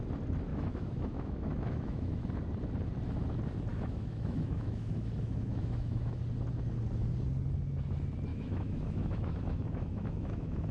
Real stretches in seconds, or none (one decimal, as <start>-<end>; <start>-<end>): 0.0-0.5; 2.3-3.7; 6.2-8.3